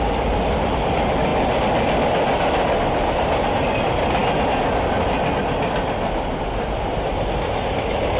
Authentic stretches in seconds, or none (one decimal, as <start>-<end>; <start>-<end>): 0.0-8.2